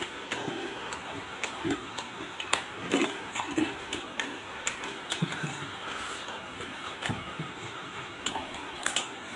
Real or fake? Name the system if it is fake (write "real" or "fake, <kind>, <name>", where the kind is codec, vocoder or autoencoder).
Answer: fake, codec, SNAC